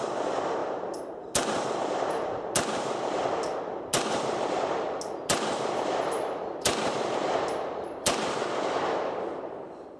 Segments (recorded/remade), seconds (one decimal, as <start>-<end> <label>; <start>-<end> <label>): 0.0-10.0 recorded